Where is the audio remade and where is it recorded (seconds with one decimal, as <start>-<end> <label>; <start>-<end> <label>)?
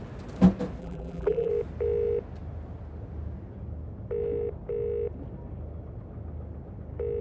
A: 0.0-0.8 recorded; 0.8-1.5 remade; 1.5-7.2 recorded